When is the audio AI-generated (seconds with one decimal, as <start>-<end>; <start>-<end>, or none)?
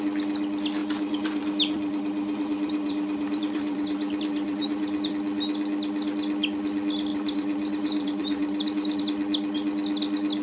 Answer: 0.8-5.1; 7.1-9.0